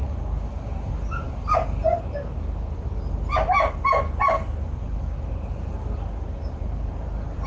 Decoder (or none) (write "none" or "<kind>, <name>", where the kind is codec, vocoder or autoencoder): none